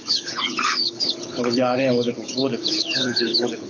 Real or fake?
fake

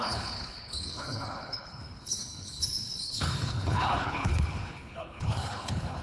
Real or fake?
fake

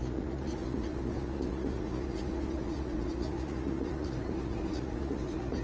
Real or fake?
fake